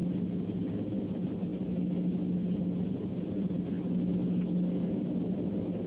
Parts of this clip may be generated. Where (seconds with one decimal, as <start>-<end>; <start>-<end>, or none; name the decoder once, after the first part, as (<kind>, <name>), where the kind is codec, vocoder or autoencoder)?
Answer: none